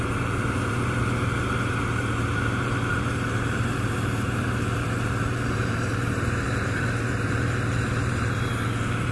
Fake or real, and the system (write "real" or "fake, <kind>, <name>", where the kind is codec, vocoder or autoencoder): fake, vocoder, BigVGAN v2